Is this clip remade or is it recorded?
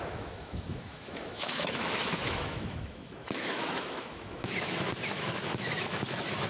remade